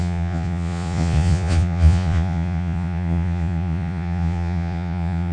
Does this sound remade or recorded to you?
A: remade